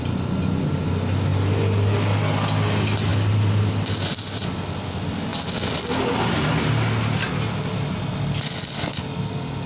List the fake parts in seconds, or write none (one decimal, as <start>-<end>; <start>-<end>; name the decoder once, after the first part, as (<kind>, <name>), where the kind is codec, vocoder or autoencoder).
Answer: none